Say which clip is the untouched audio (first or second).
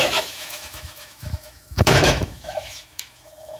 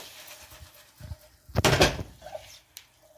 second